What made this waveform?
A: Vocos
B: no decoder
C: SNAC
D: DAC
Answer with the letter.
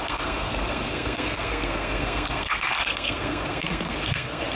C